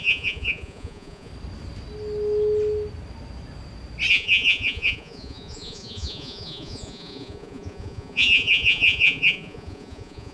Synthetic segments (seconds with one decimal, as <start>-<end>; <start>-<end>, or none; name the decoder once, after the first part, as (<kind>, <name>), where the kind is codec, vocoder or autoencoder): 0.0-1.3 (vocoder, Vocos); 4.1-10.3